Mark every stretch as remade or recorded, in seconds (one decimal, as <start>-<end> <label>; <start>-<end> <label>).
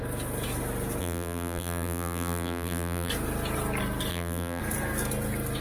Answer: 0.0-1.0 recorded; 1.0-3.1 remade; 3.1-4.1 recorded; 4.1-4.6 remade; 4.6-5.6 recorded